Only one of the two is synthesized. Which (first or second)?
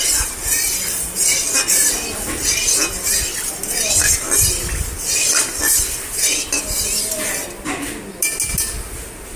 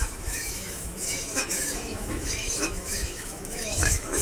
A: second